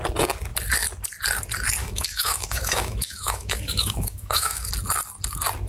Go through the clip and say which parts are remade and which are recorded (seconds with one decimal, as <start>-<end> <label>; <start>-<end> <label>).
0.0-1.8 recorded; 1.8-4.7 remade; 4.7-5.7 recorded